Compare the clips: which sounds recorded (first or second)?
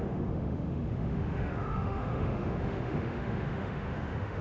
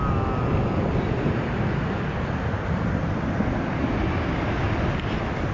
second